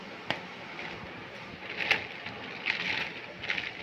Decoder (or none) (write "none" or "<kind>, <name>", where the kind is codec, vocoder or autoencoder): none